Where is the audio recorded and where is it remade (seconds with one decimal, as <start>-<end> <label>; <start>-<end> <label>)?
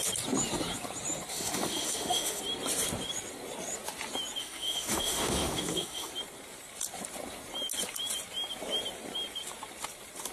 0.0-1.3 recorded; 1.3-2.4 remade; 2.4-4.4 recorded; 4.4-6.1 remade; 6.1-10.3 recorded